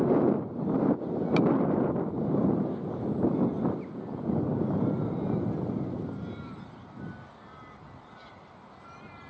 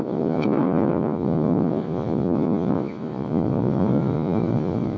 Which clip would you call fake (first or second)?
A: second